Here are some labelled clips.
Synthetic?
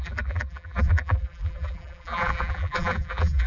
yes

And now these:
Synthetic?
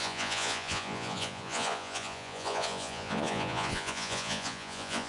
yes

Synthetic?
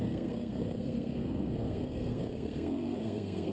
yes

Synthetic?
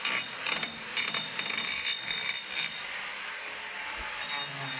no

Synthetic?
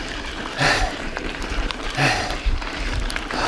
yes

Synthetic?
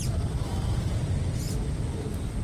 no